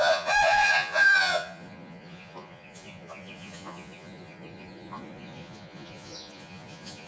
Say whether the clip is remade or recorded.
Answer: remade